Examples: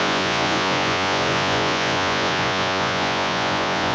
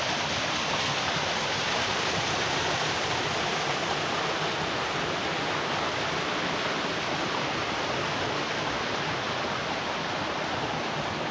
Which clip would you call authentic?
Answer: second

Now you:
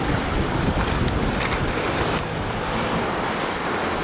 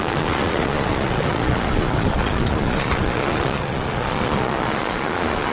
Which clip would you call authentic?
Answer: first